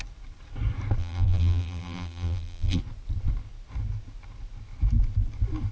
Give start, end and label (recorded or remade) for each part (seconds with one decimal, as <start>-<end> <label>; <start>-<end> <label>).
0.0-1.0 recorded; 1.0-2.8 remade; 2.8-5.7 recorded